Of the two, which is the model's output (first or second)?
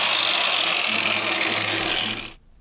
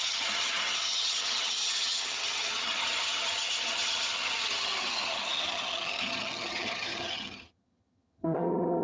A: second